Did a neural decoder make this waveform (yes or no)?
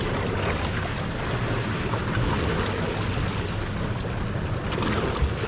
no